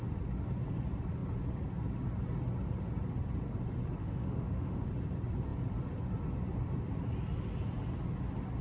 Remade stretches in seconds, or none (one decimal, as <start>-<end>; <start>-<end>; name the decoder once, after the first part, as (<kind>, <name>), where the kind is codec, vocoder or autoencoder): 4.0-4.9 (autoencoder, DAC-VAE)